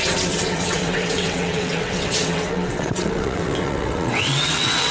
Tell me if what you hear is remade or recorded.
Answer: remade